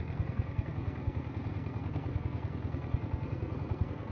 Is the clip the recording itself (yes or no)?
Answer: no